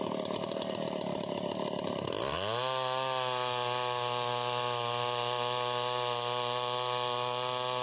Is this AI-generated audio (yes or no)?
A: no